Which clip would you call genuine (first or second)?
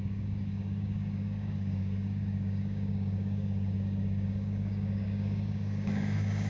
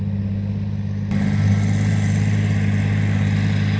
second